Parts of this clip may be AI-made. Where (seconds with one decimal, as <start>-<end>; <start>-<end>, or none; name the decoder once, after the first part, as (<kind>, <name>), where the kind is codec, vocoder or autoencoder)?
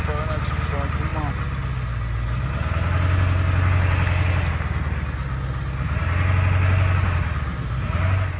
none